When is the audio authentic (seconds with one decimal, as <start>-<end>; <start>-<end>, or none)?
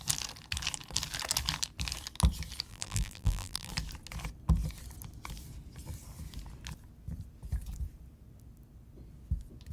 0.0-2.7; 3.7-9.7